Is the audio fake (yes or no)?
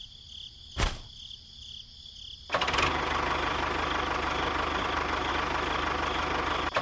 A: no